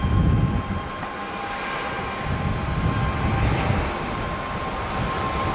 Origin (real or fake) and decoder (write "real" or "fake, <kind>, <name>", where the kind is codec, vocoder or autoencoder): real